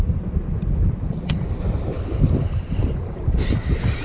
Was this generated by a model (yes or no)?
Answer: no